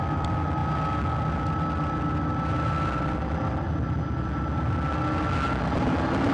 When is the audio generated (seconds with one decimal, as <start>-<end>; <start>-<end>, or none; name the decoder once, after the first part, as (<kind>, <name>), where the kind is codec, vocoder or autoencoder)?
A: none